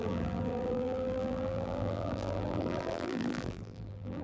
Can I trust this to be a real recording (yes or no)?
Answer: no